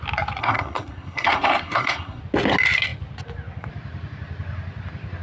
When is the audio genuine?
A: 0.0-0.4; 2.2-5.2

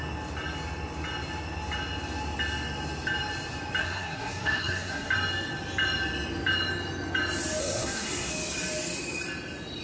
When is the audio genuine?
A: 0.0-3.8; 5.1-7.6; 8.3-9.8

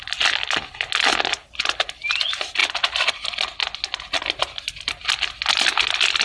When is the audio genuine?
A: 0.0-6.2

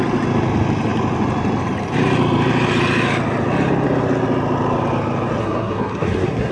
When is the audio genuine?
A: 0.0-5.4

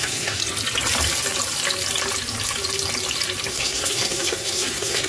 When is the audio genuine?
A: 0.4-3.5

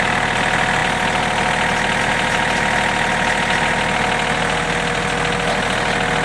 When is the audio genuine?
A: 0.0-6.2

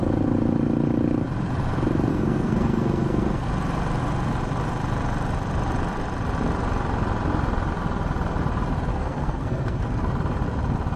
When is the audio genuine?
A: 0.0-2.1; 3.5-8.9; 9.8-11.0

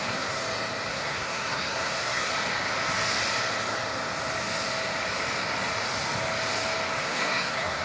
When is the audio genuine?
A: 0.4-0.9; 2.3-7.0